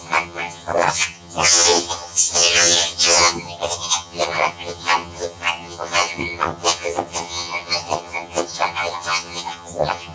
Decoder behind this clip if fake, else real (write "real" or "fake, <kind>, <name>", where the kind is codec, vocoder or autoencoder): fake, vocoder, HiFi-GAN